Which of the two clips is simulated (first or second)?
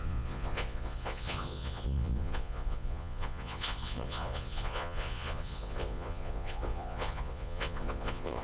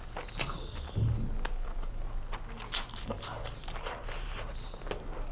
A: first